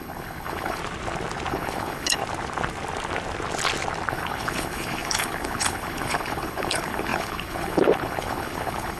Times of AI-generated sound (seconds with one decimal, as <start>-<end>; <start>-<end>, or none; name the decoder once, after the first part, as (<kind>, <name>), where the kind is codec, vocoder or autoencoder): 0.0-0.8 (codec, HILCodec); 1.5-2.2; 4.1-9.0

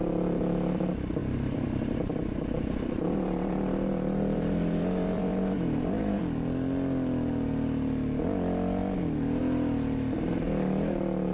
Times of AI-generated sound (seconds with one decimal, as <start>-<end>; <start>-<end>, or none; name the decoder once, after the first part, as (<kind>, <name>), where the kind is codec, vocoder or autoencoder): 1.2-6.2 (vocoder, BigVGAN v2)

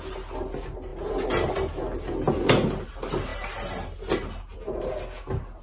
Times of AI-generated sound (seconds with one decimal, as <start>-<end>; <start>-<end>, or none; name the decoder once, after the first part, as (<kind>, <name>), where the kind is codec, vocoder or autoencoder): none

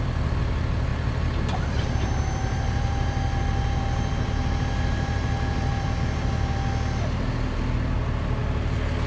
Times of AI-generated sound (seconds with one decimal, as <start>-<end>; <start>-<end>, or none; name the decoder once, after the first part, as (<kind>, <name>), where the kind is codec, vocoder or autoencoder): 0.9-5.9 (vocoder, BigVGAN v2)

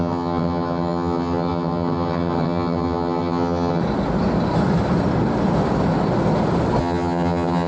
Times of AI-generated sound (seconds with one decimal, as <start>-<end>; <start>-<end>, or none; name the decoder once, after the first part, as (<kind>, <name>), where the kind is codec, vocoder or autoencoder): 0.0-3.8 (vocoder, HiFi-GAN); 6.8-7.7

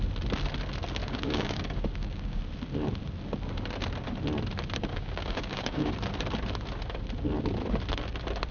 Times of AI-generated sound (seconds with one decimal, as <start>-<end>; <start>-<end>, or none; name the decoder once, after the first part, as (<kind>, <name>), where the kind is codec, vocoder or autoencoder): 1.0-2.4 (codec, DAC); 4.9-5.9

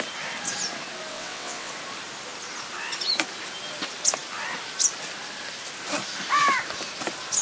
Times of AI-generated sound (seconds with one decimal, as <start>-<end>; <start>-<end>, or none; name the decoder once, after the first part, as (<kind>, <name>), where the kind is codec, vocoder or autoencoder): 1.1-1.7 (vocoder, WaveNeXt)

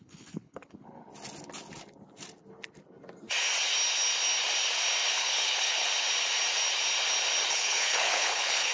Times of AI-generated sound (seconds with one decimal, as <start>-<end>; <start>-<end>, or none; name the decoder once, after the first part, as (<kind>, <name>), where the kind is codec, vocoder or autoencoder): 0.0-1.1 (codec, HILCodec); 5.1-5.9; 7.5-8.7